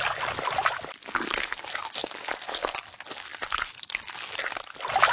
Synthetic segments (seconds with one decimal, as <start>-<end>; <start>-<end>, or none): none